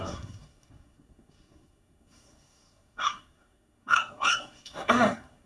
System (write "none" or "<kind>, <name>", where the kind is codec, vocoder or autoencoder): codec, SNAC